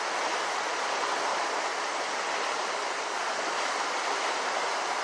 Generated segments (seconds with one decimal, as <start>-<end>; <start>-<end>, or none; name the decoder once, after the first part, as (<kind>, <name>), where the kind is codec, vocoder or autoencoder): 1.3-4.3 (vocoder, BigVGAN v2)